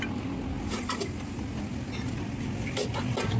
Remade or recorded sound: recorded